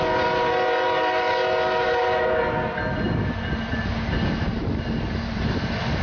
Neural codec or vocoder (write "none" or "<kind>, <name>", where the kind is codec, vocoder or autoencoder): none